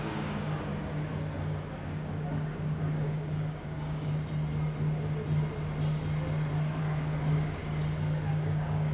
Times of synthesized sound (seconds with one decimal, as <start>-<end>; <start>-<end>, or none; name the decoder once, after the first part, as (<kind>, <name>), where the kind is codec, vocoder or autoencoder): 0.0-0.7 (codec, DAC); 1.7-4.1; 6.8-7.6; 8.3-8.9